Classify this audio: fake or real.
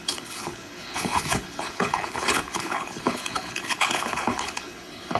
fake